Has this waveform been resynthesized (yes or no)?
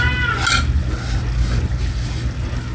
no